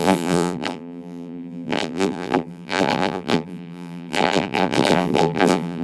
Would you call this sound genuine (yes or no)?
no